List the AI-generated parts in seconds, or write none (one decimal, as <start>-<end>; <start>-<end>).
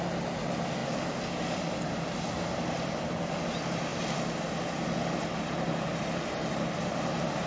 none